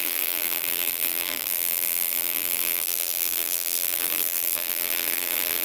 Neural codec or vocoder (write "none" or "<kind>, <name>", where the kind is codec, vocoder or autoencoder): vocoder, BigVGAN v2